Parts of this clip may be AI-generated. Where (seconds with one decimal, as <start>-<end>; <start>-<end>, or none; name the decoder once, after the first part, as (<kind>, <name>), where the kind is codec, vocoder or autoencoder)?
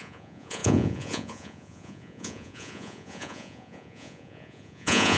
0.0-5.2 (vocoder, Vocos)